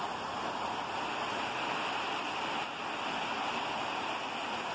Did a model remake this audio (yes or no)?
no